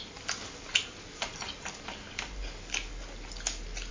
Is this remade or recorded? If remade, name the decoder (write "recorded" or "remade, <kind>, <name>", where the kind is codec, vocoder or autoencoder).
recorded